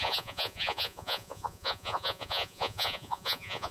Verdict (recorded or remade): remade